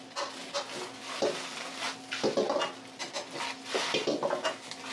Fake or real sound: real